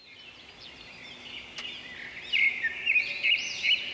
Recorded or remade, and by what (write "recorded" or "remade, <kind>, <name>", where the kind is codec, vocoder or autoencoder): recorded